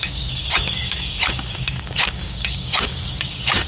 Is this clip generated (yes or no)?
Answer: yes